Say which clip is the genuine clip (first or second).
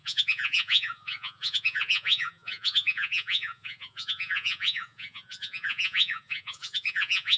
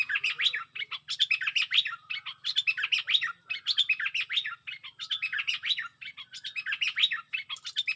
second